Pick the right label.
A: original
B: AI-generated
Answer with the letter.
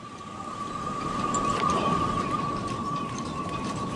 B